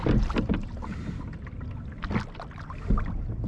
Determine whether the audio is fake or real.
real